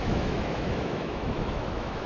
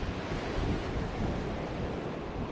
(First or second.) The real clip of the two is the second